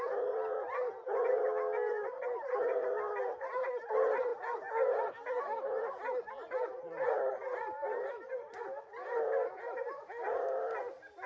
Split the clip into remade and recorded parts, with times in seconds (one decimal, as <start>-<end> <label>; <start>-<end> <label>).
0.0-11.3 recorded